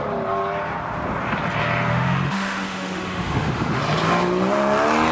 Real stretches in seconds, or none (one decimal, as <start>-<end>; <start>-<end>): 0.0-1.9; 3.8-5.1